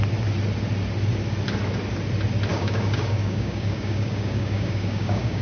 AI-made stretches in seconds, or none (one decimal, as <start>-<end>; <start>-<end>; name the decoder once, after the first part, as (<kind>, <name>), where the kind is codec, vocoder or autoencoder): 2.5-5.4 (codec, DAC)